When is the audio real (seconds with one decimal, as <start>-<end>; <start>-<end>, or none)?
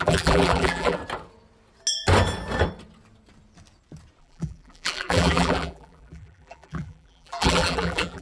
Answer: 1.0-4.2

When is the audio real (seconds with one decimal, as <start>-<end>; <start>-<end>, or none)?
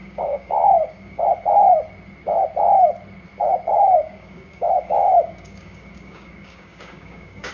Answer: 1.2-3.7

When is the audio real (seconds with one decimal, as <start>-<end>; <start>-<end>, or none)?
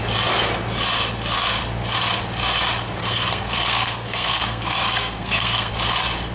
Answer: 0.0-3.0; 5.7-6.3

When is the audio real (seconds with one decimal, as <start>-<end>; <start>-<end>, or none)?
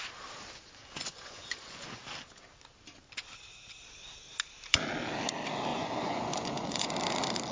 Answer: 0.0-0.8; 2.0-5.7; 6.9-7.5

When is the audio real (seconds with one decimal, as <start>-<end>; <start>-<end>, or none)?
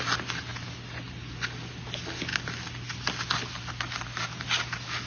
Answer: 0.0-5.1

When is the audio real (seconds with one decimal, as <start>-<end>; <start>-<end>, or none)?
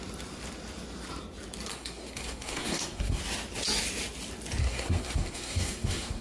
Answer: 0.0-1.7; 3.2-4.6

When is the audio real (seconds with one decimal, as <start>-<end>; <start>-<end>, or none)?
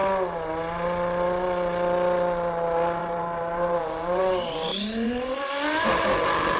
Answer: 0.0-3.0; 4.2-4.7; 6.0-6.6